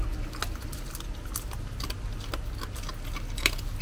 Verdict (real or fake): real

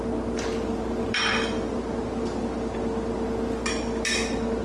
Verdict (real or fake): real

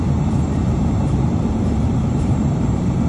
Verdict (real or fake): fake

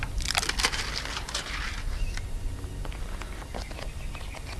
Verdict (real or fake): real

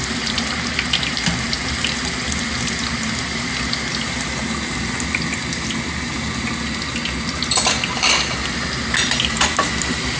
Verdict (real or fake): real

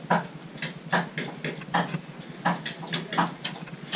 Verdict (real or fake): real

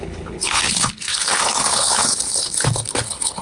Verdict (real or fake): fake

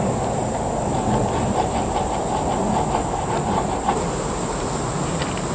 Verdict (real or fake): real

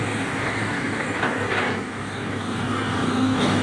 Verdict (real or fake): fake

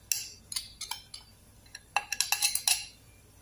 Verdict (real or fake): real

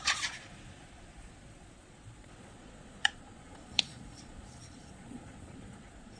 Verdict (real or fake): fake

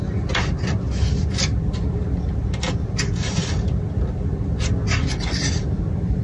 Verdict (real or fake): real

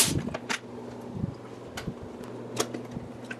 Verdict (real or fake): real